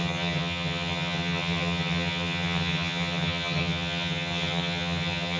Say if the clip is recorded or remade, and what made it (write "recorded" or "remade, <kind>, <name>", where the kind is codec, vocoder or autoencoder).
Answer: remade, vocoder, HiFi-GAN